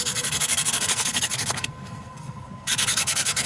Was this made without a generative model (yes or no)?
no